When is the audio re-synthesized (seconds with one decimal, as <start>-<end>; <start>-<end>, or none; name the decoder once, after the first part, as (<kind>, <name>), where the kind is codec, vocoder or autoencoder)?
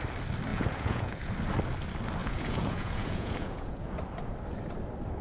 0.5-1.3 (vocoder, Vocos); 2.2-3.9